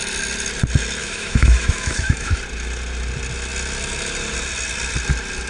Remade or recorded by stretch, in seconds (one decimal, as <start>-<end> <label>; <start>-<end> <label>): 0.0-1.0 recorded; 1.0-2.4 remade; 2.4-5.5 recorded